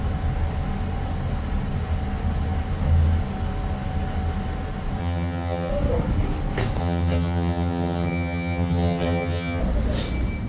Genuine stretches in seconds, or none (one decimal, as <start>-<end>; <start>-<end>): 0.0-5.0; 5.7-6.8; 9.6-10.5